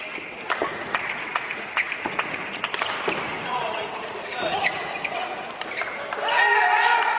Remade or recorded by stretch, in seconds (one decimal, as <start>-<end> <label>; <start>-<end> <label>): 0.0-0.7 recorded; 0.7-2.6 remade; 2.6-3.3 recorded; 3.3-5.5 remade; 5.5-7.2 recorded